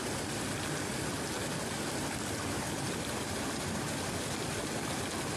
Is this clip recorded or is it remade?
recorded